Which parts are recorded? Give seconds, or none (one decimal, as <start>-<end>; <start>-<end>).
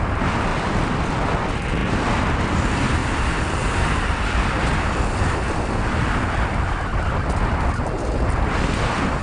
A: 0.5-1.4; 3.0-6.9